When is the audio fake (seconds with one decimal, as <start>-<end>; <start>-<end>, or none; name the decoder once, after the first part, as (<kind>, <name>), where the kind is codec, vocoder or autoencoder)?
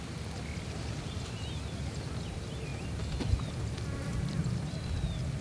0.0-2.7 (vocoder, BigVGAN v2); 4.7-5.4